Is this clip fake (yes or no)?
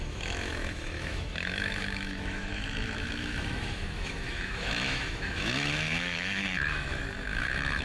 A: yes